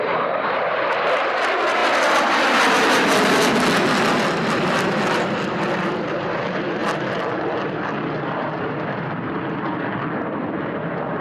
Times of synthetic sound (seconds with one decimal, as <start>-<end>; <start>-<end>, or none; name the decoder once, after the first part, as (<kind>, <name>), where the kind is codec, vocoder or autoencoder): none